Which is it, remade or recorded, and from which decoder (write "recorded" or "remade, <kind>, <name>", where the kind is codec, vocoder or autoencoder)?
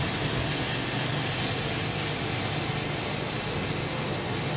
recorded